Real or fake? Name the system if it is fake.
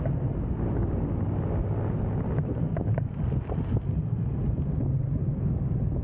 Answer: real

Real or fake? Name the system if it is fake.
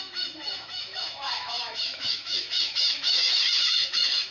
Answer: fake, autoencoder, DAC-VAE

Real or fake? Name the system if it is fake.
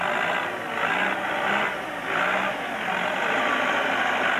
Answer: real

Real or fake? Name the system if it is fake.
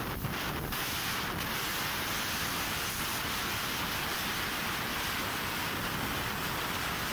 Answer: real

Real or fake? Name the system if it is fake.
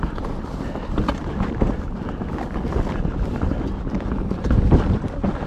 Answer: real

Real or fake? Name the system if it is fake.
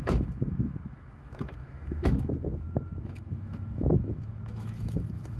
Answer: fake, autoencoder, DAC-VAE